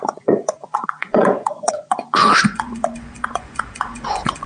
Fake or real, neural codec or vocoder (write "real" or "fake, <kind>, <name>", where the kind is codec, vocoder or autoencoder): fake, vocoder, Vocos